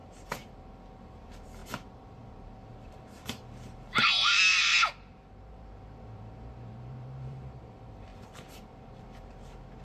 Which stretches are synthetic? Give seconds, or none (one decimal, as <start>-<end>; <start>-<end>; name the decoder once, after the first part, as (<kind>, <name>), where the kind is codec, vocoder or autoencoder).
0.0-9.8 (vocoder, BigVGAN v2)